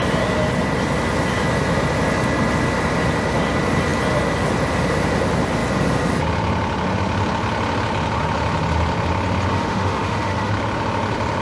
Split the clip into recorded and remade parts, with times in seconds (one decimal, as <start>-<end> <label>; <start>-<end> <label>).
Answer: 0.0-9.5 recorded; 9.5-10.5 remade; 10.5-11.4 recorded